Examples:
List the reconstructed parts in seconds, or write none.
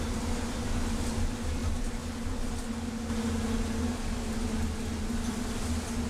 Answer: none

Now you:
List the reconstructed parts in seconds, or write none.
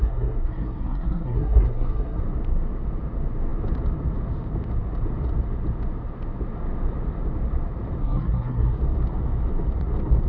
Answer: 0.0-2.2 (codec, SNAC); 8.0-8.8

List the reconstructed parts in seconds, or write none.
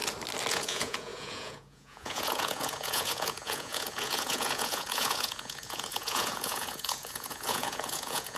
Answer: 0.5-8.4 (vocoder, Vocos)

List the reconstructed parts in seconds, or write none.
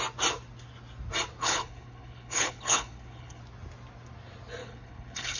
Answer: 1.4-3.4 (codec, HILCodec); 4.6-5.4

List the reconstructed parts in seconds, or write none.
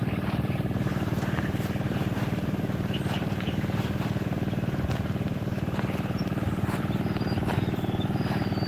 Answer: 0.0-6.2 (vocoder, BigVGAN v2); 7.6-8.7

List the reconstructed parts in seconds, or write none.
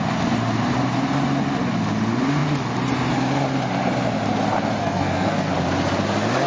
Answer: 4.8-5.5 (codec, SNAC)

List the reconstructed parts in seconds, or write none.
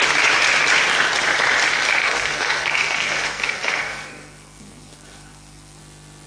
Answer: 2.0-5.8 (codec, SNAC)